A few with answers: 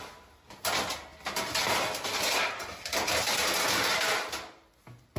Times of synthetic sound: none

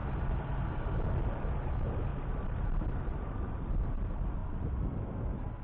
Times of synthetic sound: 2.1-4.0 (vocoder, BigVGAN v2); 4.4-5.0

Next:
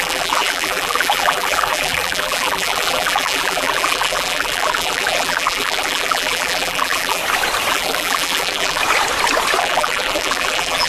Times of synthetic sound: 0.0-7.2 (vocoder, BigVGAN v2); 7.7-8.8; 9.6-10.9